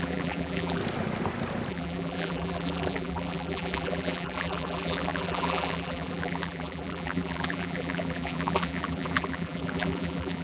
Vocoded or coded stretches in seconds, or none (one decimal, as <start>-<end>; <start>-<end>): 0.0-0.8; 1.7-10.4